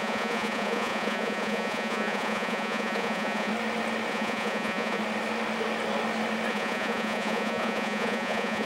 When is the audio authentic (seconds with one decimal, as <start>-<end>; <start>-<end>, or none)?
3.5-4.1; 5.0-6.5